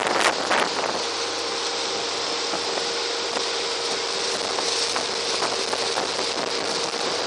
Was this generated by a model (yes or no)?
no